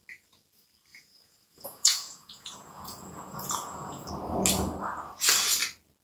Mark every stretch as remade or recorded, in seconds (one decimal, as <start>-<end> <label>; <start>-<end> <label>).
0.0-0.9 recorded; 0.9-4.1 remade; 4.1-6.0 recorded